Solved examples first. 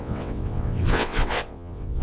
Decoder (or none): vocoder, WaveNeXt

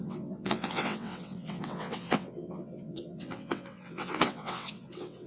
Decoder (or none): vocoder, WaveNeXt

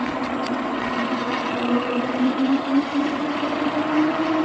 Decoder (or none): vocoder, WaveNeXt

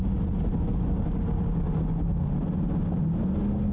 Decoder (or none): none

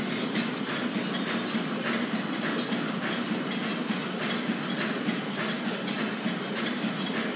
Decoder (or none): none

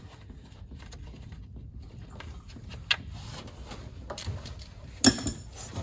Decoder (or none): none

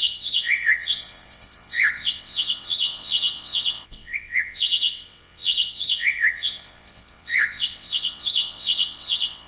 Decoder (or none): vocoder, WaveNeXt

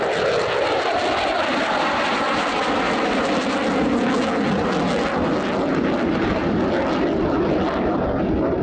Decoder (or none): none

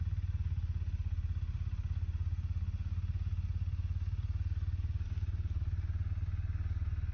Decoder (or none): none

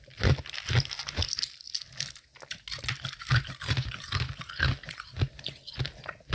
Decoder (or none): none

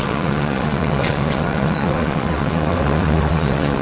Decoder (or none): vocoder, WaveNeXt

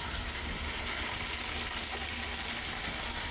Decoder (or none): none